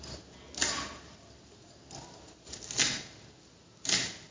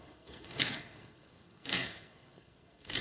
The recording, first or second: first